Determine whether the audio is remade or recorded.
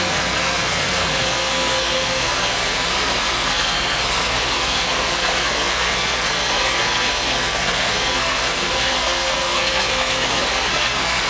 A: remade